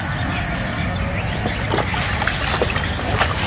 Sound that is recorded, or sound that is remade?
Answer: recorded